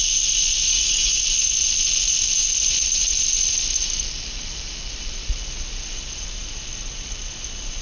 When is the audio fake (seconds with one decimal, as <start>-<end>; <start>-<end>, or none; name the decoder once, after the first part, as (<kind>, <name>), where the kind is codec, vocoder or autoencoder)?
0.7-1.2 (codec, DAC)